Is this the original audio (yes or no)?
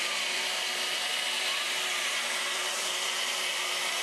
no